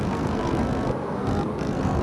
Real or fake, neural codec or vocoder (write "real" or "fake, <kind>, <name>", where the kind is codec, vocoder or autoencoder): fake, codec, SNAC